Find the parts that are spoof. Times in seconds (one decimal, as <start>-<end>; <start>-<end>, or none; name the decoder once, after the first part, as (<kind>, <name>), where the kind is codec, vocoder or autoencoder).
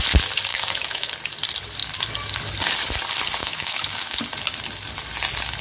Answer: 0.5-1.1 (autoencoder, DAC-VAE); 3.4-4.2